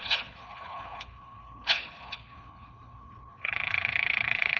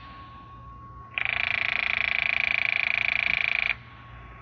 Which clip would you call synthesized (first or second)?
first